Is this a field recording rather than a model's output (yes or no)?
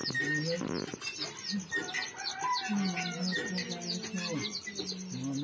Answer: yes